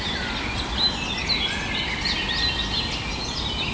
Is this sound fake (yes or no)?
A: no